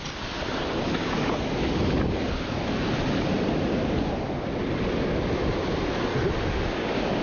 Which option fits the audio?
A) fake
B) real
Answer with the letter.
B